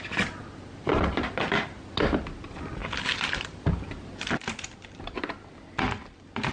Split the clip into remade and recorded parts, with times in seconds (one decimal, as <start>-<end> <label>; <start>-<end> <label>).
0.0-2.8 recorded; 2.8-5.7 remade; 5.7-6.5 recorded